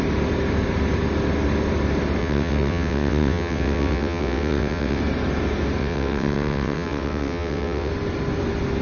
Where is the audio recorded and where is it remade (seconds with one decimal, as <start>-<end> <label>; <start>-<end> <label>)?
0.0-2.2 recorded; 2.2-5.0 remade; 5.0-5.8 recorded; 5.8-7.9 remade; 7.9-8.8 recorded